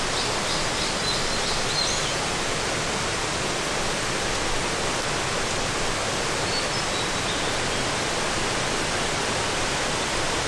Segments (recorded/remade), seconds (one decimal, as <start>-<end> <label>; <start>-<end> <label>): 0.0-10.5 recorded

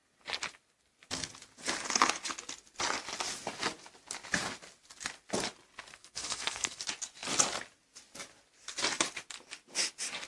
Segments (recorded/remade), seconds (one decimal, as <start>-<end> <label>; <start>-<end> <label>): 0.0-5.9 recorded; 5.9-6.8 remade; 6.8-10.3 recorded

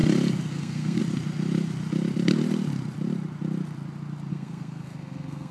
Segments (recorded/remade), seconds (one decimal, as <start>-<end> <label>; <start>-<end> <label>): 0.0-0.5 recorded; 0.5-1.0 remade; 1.0-4.3 recorded; 4.3-5.5 remade

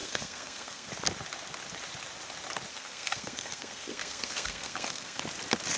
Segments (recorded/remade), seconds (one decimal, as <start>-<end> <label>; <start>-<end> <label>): 0.0-0.9 remade; 0.9-2.7 recorded; 2.7-5.2 remade; 5.2-5.8 recorded

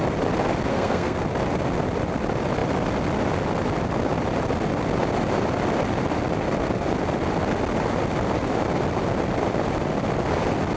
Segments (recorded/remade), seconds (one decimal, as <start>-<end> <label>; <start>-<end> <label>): 0.0-0.7 recorded; 0.7-1.2 remade; 1.2-10.8 recorded

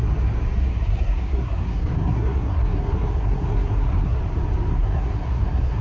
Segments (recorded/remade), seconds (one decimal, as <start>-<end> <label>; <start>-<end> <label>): 0.0-0.7 recorded; 0.7-4.2 remade; 4.2-4.7 recorded; 4.7-5.8 remade